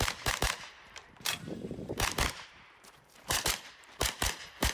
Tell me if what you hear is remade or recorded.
remade